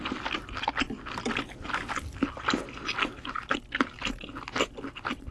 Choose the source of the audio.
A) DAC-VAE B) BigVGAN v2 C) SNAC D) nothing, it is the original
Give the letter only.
D